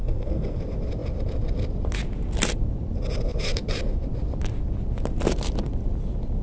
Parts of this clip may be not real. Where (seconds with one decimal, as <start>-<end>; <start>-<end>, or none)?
0.0-0.6